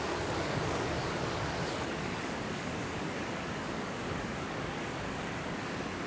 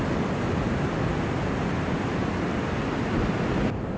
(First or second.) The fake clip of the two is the first